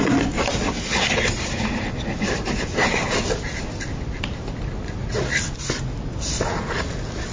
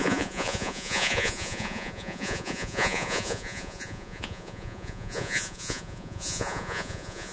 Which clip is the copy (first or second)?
second